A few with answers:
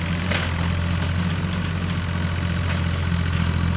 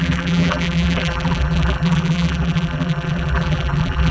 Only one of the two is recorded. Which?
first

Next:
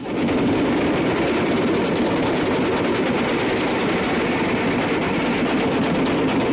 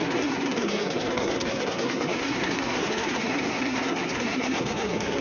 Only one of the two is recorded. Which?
first